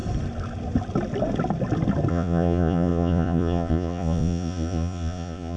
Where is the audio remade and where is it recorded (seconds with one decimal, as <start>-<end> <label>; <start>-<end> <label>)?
0.0-2.1 recorded; 2.1-5.6 remade